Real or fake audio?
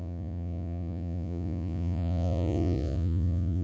fake